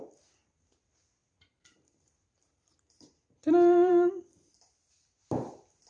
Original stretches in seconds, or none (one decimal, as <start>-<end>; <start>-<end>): 0.0-1.2; 4.7-5.9